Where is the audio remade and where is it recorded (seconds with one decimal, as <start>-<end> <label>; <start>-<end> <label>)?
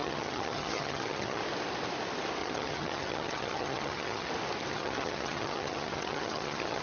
0.0-1.4 remade; 1.4-2.4 recorded; 2.4-4.3 remade; 4.3-4.7 recorded; 4.7-6.8 remade